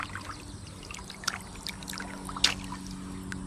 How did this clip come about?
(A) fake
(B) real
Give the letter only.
B